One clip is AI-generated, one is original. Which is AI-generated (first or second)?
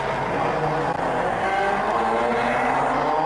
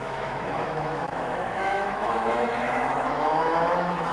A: second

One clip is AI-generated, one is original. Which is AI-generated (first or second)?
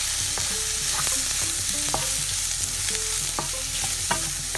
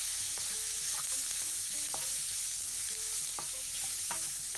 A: second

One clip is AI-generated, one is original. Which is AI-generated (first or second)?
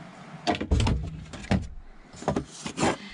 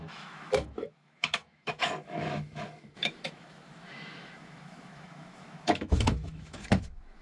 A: second